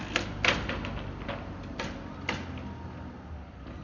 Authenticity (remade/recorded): recorded